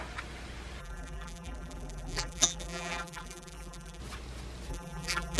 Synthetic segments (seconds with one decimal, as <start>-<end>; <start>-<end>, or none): 0.8-4.0; 4.7-5.4